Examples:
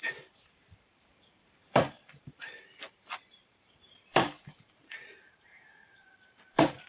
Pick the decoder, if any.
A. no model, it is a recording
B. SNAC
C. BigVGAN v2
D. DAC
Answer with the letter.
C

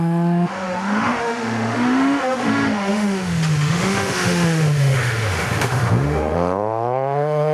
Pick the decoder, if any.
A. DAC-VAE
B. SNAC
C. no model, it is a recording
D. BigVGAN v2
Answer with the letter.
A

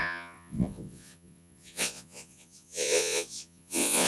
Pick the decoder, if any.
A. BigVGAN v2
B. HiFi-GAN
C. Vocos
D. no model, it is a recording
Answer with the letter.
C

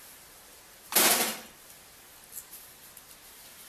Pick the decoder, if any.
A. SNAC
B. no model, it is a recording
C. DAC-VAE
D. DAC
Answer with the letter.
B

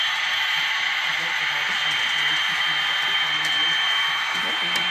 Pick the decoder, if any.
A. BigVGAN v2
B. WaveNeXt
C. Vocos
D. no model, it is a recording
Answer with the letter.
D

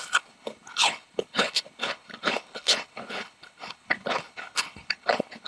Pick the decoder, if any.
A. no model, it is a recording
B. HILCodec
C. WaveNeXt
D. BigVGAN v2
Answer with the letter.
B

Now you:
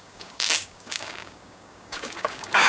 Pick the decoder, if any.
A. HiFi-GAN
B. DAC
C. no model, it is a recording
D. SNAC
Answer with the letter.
B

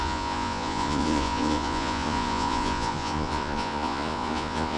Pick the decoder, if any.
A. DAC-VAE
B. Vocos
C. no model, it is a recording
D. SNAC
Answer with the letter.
B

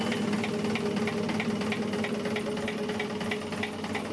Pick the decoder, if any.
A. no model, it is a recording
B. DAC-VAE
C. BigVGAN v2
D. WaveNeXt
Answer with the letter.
A